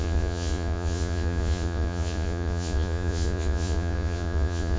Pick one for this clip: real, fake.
fake